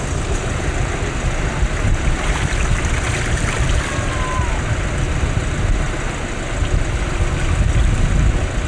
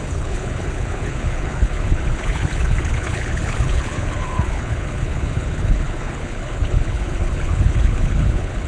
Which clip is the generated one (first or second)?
second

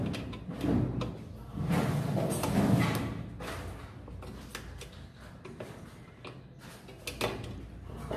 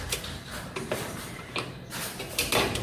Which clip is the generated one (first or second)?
second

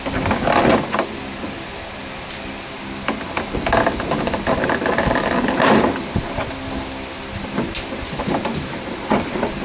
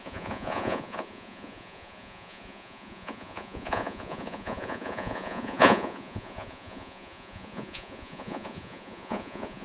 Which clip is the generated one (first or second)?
second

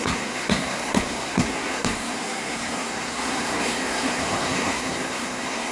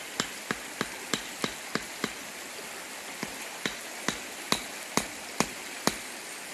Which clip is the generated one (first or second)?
first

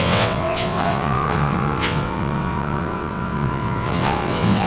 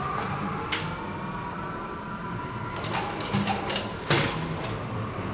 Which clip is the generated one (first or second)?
first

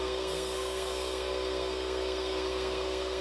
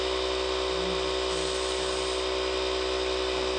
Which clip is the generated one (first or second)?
first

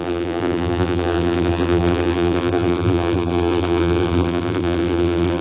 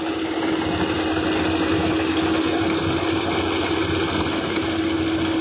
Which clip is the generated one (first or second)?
first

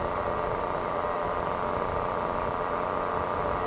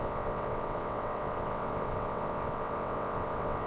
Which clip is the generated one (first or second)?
second